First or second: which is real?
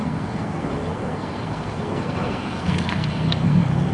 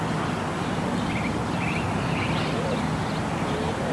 second